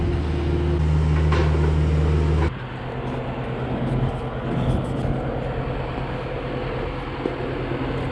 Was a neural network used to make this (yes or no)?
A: no